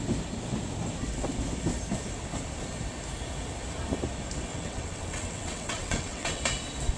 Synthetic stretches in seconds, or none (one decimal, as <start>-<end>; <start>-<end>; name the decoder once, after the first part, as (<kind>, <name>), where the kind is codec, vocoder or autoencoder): 4.5-6.4 (vocoder, WaveNeXt)